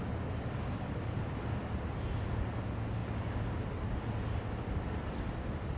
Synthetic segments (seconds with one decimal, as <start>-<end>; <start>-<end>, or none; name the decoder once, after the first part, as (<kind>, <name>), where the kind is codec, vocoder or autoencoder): none